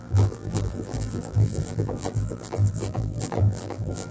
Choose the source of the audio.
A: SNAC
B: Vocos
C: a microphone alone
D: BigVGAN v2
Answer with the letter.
D